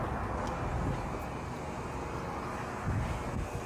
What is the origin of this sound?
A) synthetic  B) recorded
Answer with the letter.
B